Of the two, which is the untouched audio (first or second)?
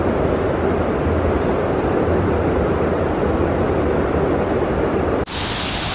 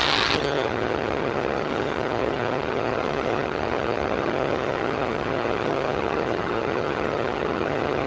first